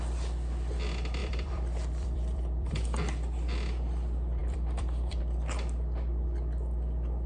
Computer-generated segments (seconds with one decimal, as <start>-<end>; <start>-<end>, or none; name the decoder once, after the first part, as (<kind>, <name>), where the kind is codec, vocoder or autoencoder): 1.2-3.0 (vocoder, BigVGAN v2); 4.4-5.2